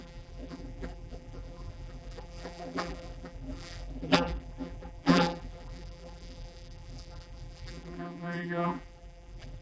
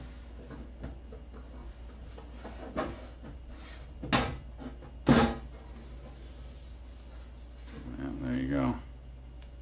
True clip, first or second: second